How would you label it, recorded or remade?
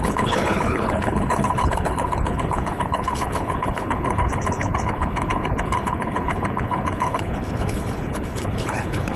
remade